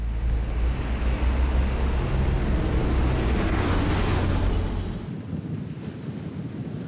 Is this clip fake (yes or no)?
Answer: no